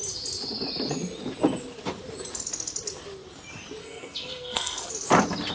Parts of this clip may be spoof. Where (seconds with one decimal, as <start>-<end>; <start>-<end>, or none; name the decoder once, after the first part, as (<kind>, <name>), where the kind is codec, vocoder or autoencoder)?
3.8-4.9 (codec, SNAC)